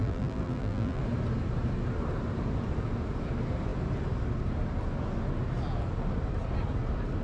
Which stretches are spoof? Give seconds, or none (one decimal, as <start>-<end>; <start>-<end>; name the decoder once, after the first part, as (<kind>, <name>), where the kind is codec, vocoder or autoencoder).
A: 0.0-1.0 (vocoder, BigVGAN v2)